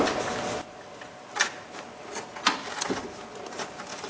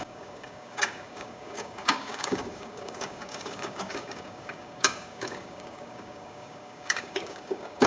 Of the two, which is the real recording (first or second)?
first